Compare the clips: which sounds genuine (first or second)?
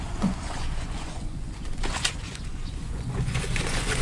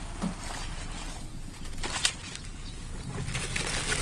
second